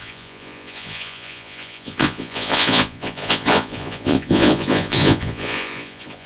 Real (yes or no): no